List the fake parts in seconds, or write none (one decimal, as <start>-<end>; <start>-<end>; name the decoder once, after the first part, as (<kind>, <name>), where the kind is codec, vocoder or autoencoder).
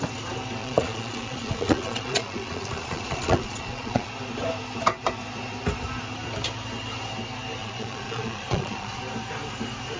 0.6-4.1 (vocoder, Vocos); 7.6-9.0